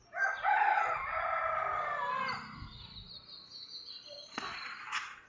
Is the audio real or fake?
real